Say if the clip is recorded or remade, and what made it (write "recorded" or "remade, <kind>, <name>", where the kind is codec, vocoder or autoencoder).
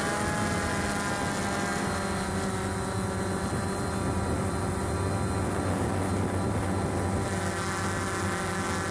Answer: recorded